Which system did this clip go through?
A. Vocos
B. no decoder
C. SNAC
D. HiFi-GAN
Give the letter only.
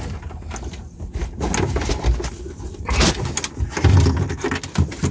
B